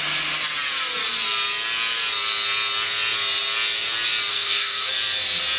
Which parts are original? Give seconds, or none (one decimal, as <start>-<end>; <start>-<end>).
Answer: 0.0-4.3; 4.9-5.6